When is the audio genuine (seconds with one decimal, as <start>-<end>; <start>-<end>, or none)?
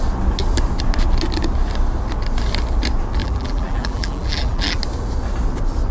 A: 0.0-3.2; 4.8-5.9